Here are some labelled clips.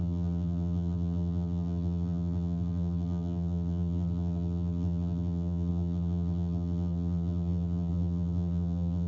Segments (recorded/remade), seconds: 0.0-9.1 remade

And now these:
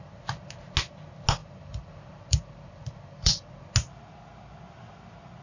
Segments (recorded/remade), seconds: 0.0-1.4 recorded; 1.4-3.5 remade; 3.5-5.4 recorded

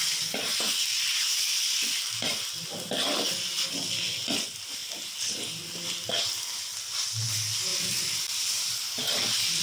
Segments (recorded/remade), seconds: 0.0-0.5 recorded; 0.5-2.5 remade; 2.5-7.7 recorded; 7.7-9.6 remade

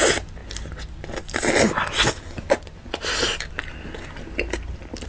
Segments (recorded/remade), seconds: 0.0-5.1 recorded

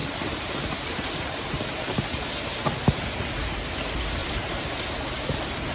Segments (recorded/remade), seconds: 0.0-2.3 remade; 2.3-4.2 recorded; 4.2-4.7 remade; 4.7-5.7 recorded

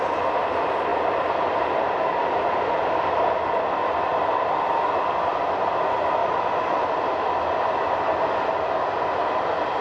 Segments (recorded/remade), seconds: 0.0-6.2 recorded; 6.2-7.3 remade; 7.3-9.8 recorded

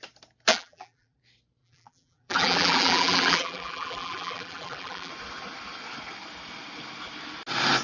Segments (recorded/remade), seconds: 0.0-0.5 recorded; 0.5-1.2 remade; 1.2-1.6 recorded; 1.6-5.1 remade; 5.1-7.8 recorded